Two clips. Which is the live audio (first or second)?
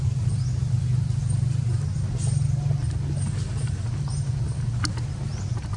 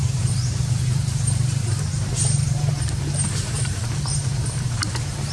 first